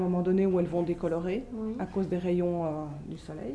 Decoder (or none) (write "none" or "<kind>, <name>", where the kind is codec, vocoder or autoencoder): none